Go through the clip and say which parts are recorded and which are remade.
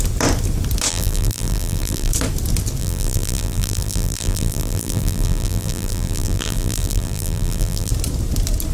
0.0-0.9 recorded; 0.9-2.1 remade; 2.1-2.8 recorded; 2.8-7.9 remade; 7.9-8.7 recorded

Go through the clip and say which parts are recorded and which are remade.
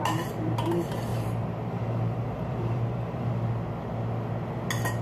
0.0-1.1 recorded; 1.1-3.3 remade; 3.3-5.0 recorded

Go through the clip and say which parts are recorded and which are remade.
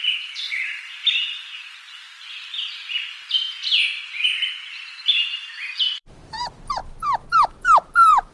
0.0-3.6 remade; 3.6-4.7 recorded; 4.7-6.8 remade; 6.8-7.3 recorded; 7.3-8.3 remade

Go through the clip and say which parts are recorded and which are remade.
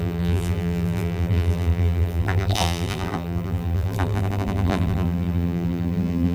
0.0-6.3 remade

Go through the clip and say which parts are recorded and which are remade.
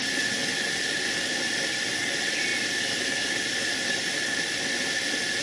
0.0-5.4 recorded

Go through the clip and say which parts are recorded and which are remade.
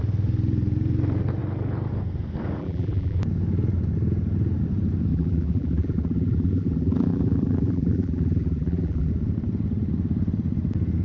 0.0-2.6 recorded; 2.6-3.2 remade; 3.2-5.1 recorded; 5.1-9.1 remade; 9.1-11.0 recorded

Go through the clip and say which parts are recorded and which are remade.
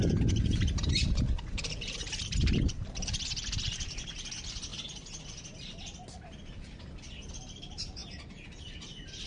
0.0-4.7 remade; 4.7-7.3 recorded; 7.3-9.3 remade